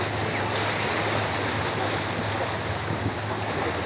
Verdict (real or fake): real